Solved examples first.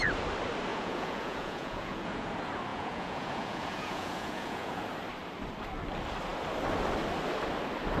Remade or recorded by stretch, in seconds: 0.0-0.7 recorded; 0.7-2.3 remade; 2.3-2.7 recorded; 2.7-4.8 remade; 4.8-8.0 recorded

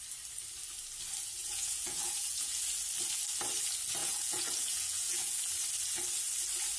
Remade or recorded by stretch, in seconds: 0.0-1.4 recorded; 1.4-2.6 remade; 2.6-4.0 recorded; 4.0-5.4 remade; 5.4-6.8 recorded

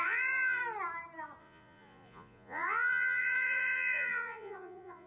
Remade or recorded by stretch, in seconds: 0.0-0.6 remade; 0.6-1.4 recorded; 1.4-5.1 remade

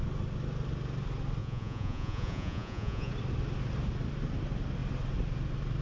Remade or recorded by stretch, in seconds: 0.0-1.4 recorded; 1.4-3.1 remade; 3.1-5.8 recorded

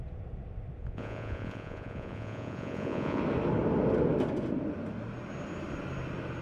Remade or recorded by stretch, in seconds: 0.0-0.8 recorded; 0.8-3.2 remade; 3.2-6.4 recorded